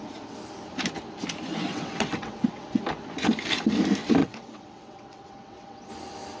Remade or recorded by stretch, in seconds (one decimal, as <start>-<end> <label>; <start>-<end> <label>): 0.0-1.7 recorded; 1.7-2.8 remade; 2.8-4.2 recorded; 4.2-5.9 remade; 5.9-6.4 recorded